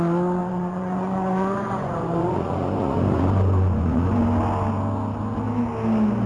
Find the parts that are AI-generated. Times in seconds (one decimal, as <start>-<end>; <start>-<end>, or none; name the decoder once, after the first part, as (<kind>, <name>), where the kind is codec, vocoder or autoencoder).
0.4-4.2 (vocoder, Vocos)